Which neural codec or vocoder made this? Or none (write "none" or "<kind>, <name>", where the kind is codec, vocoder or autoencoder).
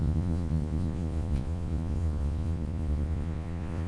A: vocoder, Vocos